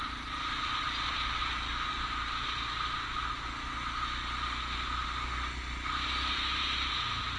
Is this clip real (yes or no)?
yes